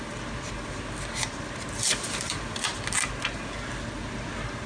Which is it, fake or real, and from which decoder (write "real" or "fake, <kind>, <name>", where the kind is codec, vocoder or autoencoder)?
real